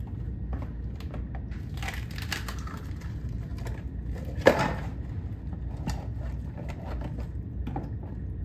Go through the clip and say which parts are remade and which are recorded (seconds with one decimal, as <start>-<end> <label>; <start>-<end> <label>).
0.0-8.4 recorded